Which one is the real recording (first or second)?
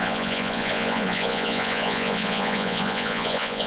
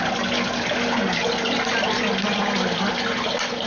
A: second